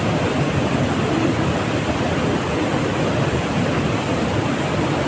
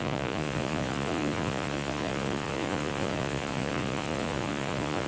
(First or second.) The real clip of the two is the first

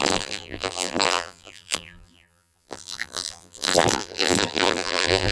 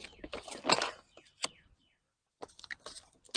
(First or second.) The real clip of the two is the second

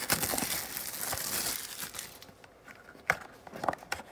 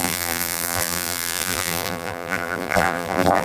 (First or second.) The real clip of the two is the first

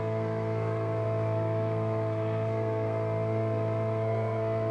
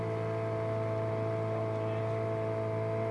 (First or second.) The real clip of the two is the second